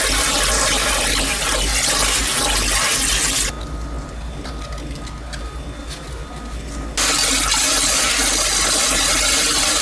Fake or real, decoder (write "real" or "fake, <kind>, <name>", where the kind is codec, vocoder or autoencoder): real